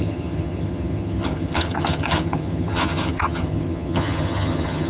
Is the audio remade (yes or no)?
yes